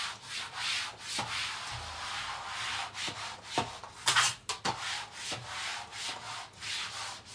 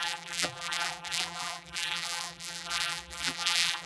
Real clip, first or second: first